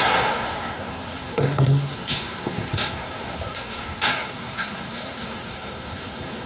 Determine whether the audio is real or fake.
fake